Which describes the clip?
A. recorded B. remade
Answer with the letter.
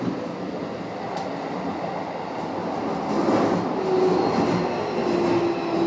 A